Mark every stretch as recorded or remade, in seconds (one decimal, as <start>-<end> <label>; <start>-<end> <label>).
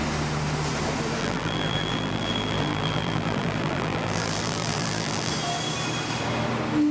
0.0-1.2 recorded; 1.2-5.3 remade; 5.3-6.9 recorded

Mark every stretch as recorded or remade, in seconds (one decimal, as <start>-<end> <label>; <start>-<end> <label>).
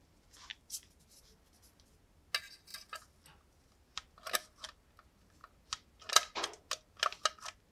0.0-0.5 recorded; 0.5-1.2 remade; 1.2-7.7 recorded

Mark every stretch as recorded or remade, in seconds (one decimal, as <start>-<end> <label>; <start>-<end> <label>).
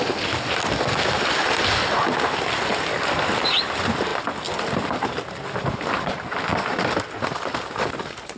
0.0-8.4 recorded